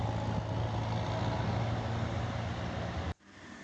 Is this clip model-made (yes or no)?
no